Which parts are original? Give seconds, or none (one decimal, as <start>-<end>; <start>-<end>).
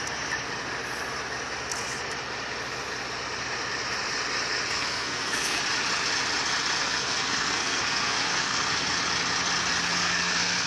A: 0.0-4.7; 5.6-6.8; 9.0-10.0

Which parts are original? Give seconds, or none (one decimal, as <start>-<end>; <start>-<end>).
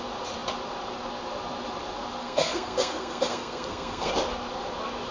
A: 0.0-2.2; 4.1-5.1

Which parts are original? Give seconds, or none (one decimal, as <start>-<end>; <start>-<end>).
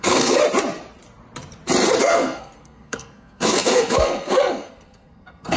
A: 0.4-2.0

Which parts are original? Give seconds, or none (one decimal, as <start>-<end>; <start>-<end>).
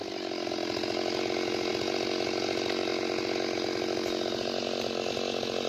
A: 0.0-5.7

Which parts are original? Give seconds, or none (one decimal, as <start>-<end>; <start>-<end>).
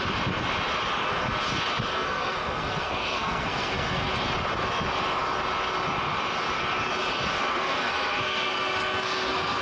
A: 0.0-1.9; 4.1-7.5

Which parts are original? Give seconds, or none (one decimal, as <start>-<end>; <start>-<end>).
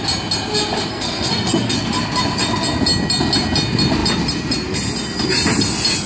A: 0.0-0.9; 1.7-6.1